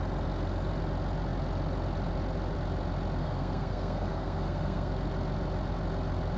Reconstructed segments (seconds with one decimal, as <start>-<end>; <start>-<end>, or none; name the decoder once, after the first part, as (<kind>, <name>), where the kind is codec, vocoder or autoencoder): 3.2-4.9 (codec, SNAC)